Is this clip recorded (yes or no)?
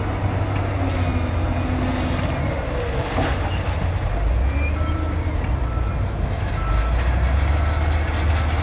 yes